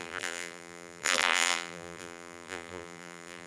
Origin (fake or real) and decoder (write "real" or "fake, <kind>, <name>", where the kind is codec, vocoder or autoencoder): fake, vocoder, BigVGAN v2